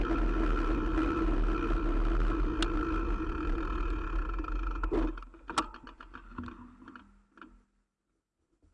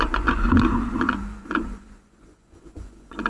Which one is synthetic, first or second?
second